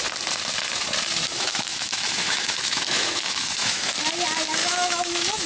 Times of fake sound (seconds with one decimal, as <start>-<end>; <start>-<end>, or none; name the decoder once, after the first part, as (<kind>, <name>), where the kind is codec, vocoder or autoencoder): 1.3-3.9 (autoencoder, DAC-VAE); 4.6-5.5